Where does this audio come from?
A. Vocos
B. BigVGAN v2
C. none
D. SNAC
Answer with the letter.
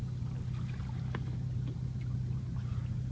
C